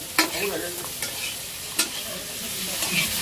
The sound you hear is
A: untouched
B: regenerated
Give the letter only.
A